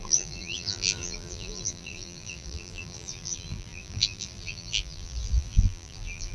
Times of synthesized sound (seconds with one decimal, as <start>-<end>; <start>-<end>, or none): 0.0-6.3